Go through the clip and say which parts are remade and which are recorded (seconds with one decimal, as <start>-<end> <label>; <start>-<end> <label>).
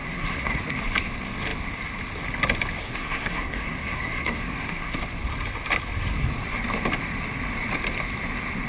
0.0-0.6 remade; 0.6-2.8 recorded; 2.8-5.0 remade; 5.0-8.7 recorded